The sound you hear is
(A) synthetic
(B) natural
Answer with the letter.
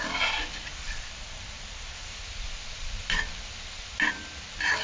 B